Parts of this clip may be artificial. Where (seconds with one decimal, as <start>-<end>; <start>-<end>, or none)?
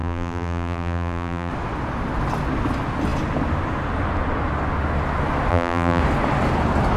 0.0-1.5; 5.5-6.0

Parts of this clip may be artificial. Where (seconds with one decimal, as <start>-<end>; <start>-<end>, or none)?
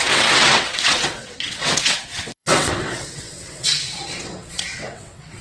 0.0-5.4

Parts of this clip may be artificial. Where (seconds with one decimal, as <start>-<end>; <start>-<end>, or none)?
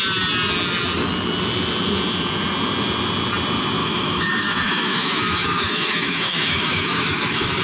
3.8-7.6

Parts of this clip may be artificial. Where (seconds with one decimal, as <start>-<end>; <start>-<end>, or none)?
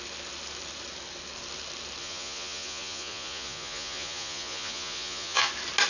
2.0-5.5